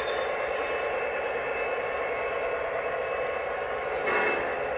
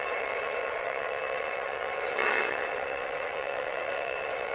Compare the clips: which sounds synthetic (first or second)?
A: second